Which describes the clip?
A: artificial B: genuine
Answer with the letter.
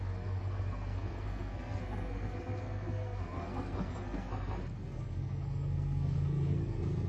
A